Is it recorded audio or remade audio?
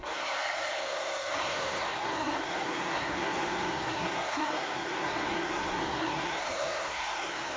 remade